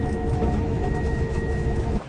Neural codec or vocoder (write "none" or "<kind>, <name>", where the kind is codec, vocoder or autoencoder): autoencoder, DAC-VAE